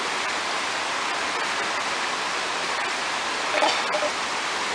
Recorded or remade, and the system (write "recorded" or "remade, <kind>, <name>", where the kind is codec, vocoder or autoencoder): recorded